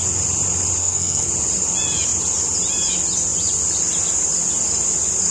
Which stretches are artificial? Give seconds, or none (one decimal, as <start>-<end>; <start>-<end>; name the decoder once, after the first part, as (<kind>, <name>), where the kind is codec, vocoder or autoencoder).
0.8-1.3 (codec, SNAC)